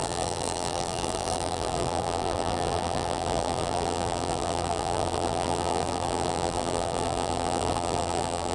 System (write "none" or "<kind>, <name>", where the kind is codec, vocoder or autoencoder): vocoder, BigVGAN v2